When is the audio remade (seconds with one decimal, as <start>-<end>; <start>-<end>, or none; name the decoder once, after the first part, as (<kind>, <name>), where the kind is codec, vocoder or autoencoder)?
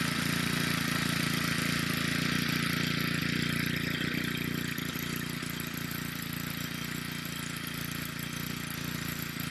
none